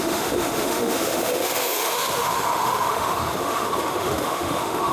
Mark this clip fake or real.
fake